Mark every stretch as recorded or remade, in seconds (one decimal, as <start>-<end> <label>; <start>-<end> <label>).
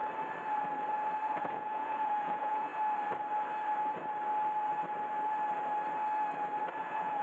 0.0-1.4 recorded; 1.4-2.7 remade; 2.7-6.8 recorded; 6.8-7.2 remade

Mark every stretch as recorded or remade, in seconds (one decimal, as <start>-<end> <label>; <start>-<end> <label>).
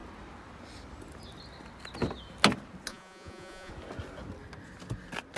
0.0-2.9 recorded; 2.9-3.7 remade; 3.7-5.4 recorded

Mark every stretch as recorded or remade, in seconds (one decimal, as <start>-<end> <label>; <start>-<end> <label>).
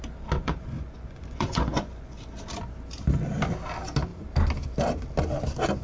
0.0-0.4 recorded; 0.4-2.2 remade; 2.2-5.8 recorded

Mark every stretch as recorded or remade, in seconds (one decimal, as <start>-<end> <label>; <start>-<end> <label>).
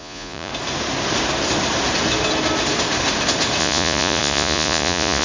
0.0-0.5 remade; 0.5-3.6 recorded; 3.6-5.2 remade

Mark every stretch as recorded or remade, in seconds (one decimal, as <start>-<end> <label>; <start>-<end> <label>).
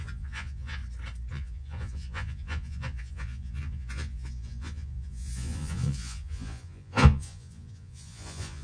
0.0-0.8 remade; 0.8-1.3 recorded; 1.3-8.6 remade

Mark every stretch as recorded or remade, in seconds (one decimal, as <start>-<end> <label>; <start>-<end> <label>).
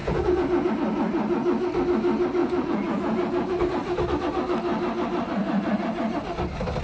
0.0-0.7 remade; 0.7-2.4 recorded; 2.4-3.6 remade; 3.6-6.8 recorded